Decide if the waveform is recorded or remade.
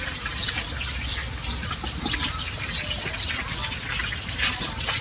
recorded